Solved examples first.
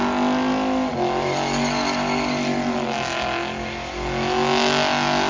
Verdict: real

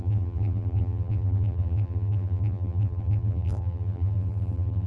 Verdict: fake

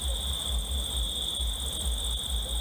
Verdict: real